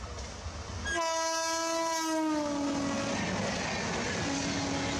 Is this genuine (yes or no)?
yes